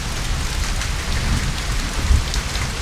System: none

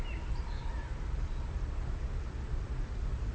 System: none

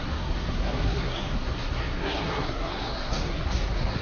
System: codec, SNAC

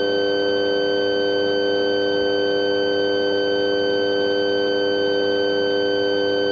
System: none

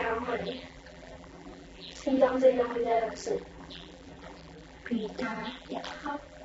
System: vocoder, BigVGAN v2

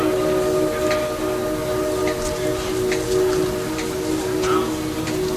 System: none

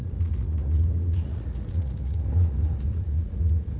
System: vocoder, Vocos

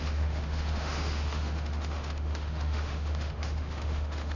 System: autoencoder, DAC-VAE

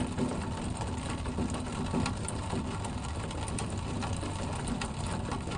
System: none